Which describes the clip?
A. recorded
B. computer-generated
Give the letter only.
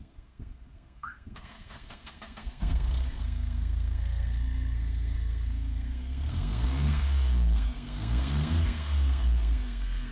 B